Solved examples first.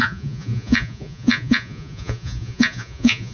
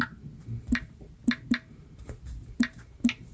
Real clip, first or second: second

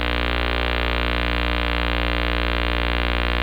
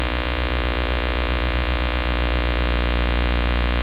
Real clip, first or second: first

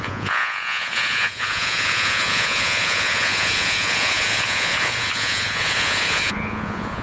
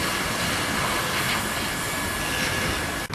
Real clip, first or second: second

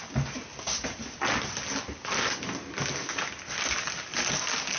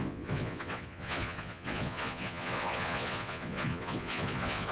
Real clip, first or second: first